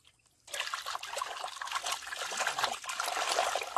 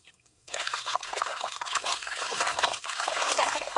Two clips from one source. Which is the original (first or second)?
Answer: first